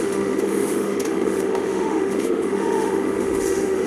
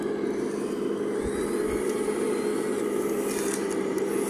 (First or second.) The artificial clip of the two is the first